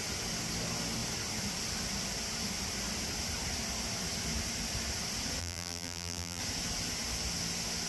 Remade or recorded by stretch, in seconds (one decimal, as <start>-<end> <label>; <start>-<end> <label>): 0.0-5.4 recorded; 5.4-6.4 remade; 6.4-7.9 recorded